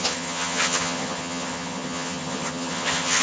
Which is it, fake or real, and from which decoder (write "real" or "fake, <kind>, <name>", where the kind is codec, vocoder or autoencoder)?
fake, vocoder, HiFi-GAN